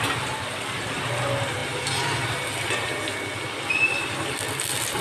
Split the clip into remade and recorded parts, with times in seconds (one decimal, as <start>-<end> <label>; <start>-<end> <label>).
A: 0.0-1.6 remade; 1.6-4.6 recorded; 4.6-5.0 remade